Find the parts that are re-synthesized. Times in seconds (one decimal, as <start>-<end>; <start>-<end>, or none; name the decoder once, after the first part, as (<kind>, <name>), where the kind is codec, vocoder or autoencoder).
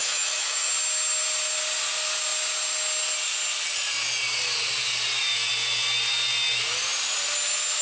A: 0.0-0.7 (autoencoder, DAC-VAE)